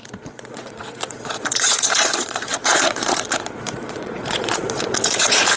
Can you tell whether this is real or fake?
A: fake